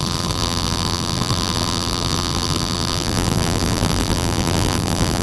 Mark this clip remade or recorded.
remade